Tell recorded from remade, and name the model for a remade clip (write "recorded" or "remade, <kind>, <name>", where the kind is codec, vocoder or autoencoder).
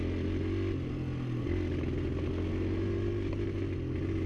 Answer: recorded